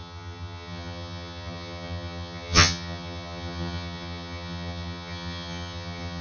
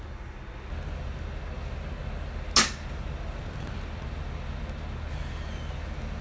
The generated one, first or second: first